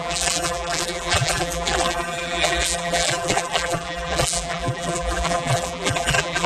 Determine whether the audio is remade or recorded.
remade